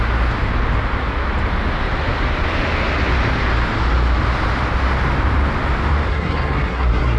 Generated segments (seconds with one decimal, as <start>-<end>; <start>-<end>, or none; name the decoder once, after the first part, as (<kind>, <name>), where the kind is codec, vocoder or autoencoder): 6.1-7.2 (codec, SNAC)